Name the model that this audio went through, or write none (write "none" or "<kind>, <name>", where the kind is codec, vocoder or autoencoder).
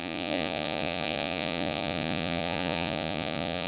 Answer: vocoder, Vocos